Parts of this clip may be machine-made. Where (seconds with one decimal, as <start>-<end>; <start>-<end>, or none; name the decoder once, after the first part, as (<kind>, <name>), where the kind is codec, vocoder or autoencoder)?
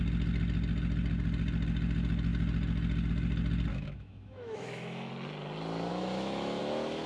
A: 3.7-5.1 (autoencoder, DAC-VAE); 5.9-6.6